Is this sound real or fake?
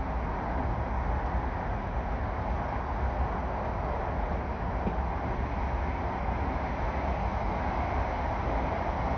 real